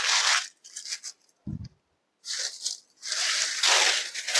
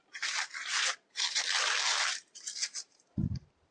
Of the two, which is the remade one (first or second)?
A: second